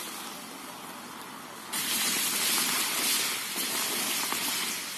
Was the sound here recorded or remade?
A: recorded